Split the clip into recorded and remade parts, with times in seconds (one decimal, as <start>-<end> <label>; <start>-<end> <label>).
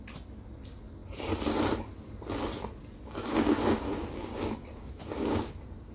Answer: 0.0-3.2 recorded; 3.2-5.9 remade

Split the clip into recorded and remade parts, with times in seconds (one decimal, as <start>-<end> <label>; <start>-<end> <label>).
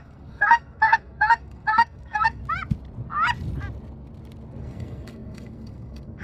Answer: 0.0-2.4 remade; 2.4-4.6 recorded; 4.6-6.2 remade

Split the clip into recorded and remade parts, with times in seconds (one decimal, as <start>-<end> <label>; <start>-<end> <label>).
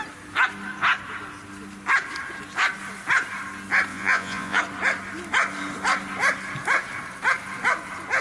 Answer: 0.0-3.9 recorded; 3.9-4.6 remade; 4.6-8.2 recorded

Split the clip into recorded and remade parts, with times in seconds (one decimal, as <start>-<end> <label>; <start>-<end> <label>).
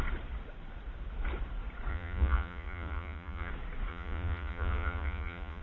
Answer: 0.0-1.9 recorded; 1.9-3.5 remade; 3.5-3.9 recorded; 3.9-5.6 remade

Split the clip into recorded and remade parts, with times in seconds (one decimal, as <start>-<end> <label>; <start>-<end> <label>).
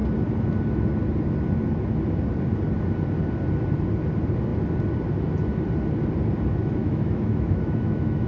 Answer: 0.0-6.6 recorded; 6.6-8.3 remade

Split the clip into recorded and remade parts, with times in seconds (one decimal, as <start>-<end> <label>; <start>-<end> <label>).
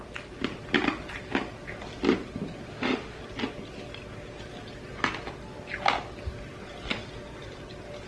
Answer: 0.0-2.7 recorded; 2.7-3.2 remade; 3.2-8.1 recorded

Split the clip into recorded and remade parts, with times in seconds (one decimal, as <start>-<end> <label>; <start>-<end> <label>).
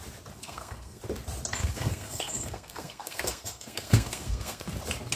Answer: 0.0-0.4 recorded; 0.4-1.0 remade; 1.0-1.6 recorded; 1.6-4.7 remade; 4.7-5.2 recorded